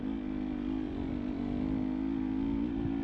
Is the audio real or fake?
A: real